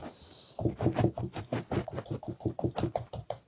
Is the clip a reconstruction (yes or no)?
yes